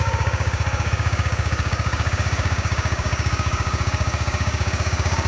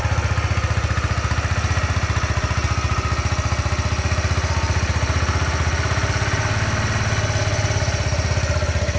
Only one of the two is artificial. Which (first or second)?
first